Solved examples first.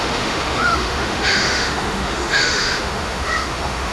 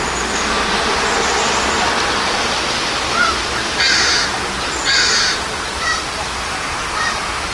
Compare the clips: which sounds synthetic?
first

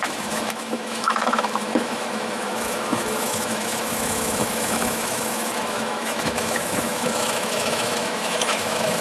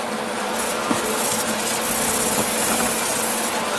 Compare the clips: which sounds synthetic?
first